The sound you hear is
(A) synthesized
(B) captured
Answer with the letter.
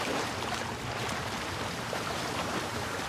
B